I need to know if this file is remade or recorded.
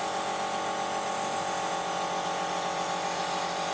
recorded